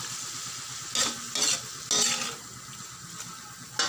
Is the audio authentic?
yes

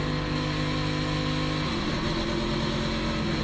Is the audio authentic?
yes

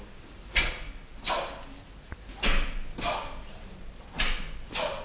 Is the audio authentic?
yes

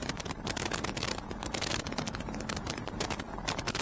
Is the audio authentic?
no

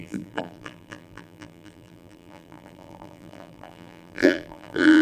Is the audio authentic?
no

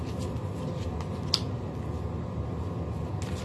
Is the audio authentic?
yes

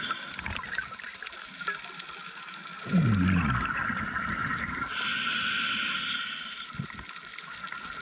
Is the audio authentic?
yes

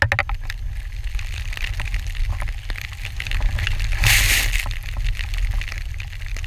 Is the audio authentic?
yes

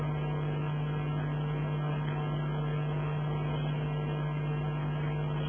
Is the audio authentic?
yes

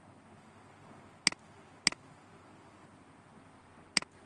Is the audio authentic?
yes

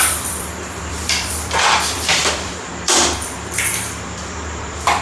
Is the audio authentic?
no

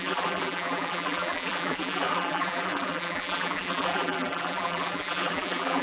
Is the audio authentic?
no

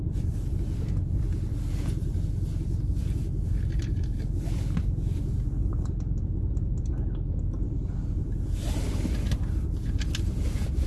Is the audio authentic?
yes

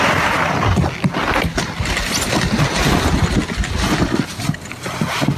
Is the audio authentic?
yes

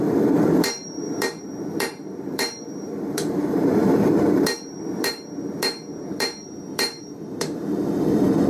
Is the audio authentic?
no